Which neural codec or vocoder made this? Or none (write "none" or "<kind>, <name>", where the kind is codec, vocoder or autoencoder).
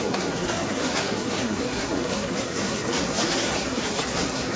codec, SNAC